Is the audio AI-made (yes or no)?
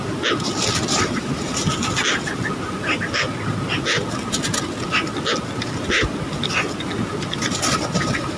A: no